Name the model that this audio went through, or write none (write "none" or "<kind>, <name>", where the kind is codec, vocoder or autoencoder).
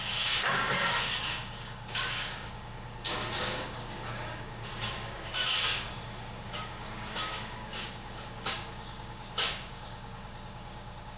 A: codec, DAC